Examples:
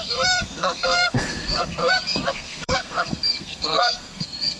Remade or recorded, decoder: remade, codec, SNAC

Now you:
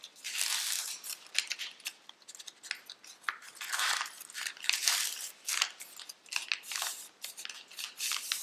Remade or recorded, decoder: recorded